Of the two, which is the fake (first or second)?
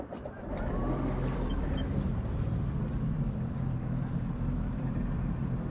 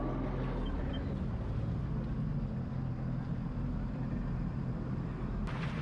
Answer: first